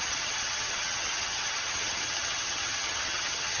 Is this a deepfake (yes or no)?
yes